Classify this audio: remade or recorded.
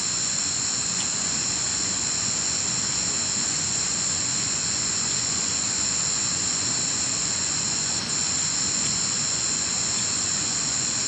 remade